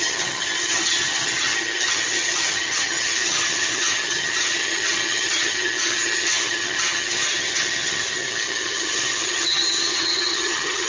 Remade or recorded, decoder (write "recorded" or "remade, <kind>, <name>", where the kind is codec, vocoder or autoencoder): remade, vocoder, HiFi-GAN